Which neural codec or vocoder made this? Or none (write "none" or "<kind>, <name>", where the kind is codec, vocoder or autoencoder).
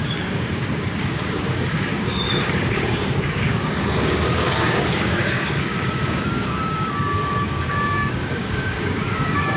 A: codec, DAC